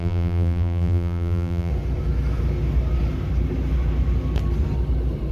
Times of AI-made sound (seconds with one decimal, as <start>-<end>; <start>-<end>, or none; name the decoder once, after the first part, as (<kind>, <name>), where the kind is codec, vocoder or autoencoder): 0.0-1.7 (vocoder, BigVGAN v2)